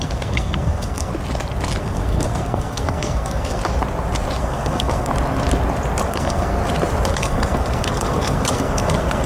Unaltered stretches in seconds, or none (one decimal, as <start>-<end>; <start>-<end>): 1.1-1.8; 3.6-4.4; 5.1-6.1; 6.6-7.1